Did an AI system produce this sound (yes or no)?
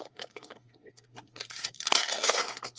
yes